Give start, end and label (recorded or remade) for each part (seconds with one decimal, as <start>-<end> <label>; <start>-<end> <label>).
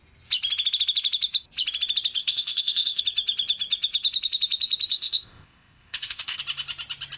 0.0-2.2 recorded; 2.2-3.0 remade; 3.0-4.9 recorded; 4.9-6.4 remade; 6.4-7.2 recorded